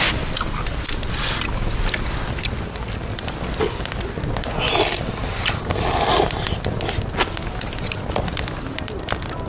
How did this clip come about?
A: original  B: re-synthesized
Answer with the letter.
A